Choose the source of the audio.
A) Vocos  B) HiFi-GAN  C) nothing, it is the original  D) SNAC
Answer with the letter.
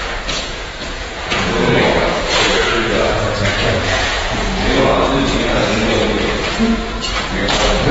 A